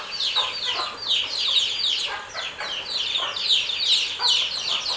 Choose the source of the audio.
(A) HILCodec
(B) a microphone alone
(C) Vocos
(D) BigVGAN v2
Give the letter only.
B